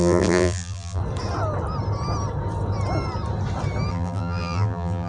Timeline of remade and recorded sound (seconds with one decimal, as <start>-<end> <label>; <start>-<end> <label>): 0.0-1.0 remade; 1.0-3.9 recorded; 3.9-5.1 remade